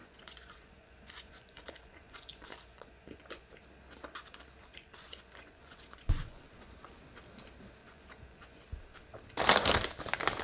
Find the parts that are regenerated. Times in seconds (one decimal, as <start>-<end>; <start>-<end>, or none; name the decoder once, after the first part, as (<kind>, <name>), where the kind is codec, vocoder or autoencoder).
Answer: 0.0-3.5 (vocoder, Vocos); 4.6-7.0; 7.8-8.6